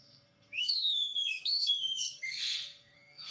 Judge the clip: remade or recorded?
remade